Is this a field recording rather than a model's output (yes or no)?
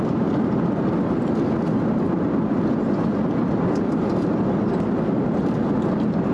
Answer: yes